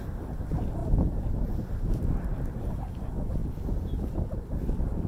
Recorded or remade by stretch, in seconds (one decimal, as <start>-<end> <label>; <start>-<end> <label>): 0.0-5.1 recorded